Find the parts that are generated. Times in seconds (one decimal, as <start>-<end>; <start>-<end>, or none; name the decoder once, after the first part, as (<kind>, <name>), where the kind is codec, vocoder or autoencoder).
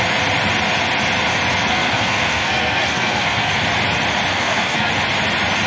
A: 1.7-3.6 (codec, SNAC); 4.3-4.9